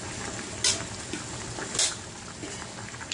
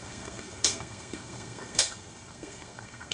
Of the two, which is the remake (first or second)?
second